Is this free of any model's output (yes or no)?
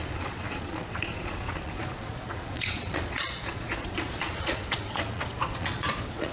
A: no